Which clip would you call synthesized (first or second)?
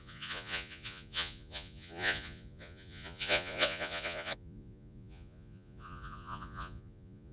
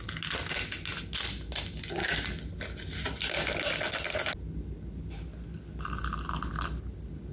first